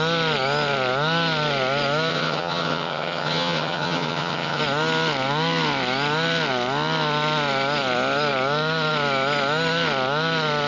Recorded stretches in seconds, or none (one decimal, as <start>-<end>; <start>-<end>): 0.0-2.1; 4.6-10.7